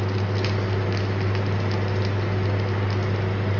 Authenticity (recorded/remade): recorded